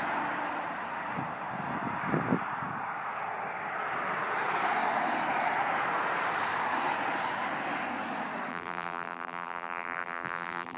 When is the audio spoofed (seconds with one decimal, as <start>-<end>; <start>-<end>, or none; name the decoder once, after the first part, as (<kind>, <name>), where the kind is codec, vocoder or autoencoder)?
8.5-10.8 (vocoder, BigVGAN v2)